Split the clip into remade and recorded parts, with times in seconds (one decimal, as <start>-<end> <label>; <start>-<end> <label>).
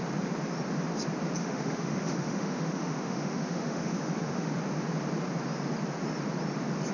0.0-1.4 recorded; 1.4-4.5 remade; 4.5-6.9 recorded